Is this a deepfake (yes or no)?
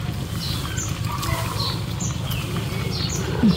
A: no